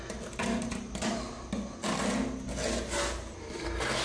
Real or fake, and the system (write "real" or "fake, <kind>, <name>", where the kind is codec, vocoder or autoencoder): real